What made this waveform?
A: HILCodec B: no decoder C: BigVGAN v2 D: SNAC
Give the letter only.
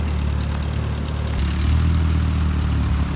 B